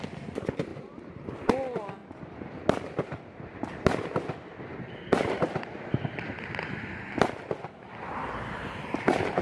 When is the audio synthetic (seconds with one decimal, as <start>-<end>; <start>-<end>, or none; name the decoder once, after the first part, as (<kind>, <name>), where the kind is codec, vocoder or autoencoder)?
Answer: 0.7-1.5 (vocoder, BigVGAN v2)